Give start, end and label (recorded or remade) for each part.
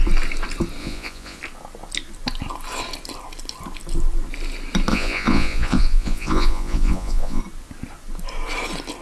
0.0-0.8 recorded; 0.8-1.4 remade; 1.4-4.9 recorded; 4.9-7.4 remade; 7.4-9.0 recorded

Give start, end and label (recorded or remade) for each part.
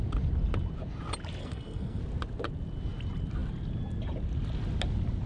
0.0-1.4 recorded; 1.4-2.0 remade; 2.0-5.3 recorded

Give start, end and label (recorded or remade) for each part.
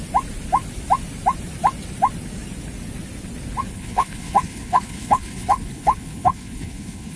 0.0-3.7 recorded; 3.7-7.2 remade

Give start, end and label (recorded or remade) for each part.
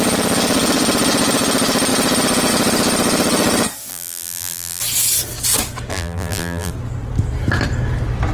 0.0-3.9 recorded; 3.9-4.8 remade; 4.8-5.9 recorded; 5.9-6.7 remade; 6.7-8.3 recorded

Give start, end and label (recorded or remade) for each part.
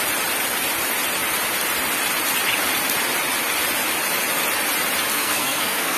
0.0-5.1 recorded; 5.1-6.0 remade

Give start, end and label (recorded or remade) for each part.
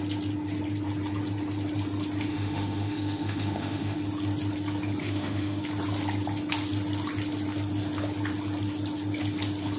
0.0-2.3 recorded; 2.3-4.0 remade; 4.0-5.0 recorded; 5.0-5.6 remade; 5.6-9.8 recorded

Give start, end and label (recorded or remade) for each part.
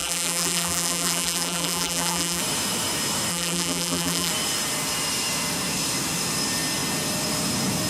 0.0-2.4 remade; 2.4-3.3 recorded; 3.3-4.3 remade; 4.3-7.9 recorded